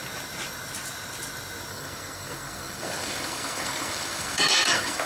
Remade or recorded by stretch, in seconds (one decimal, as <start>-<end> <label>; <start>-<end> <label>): 0.0-1.7 recorded; 1.7-5.1 remade